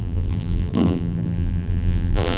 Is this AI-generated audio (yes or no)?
yes